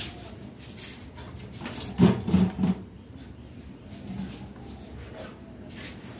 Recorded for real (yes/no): yes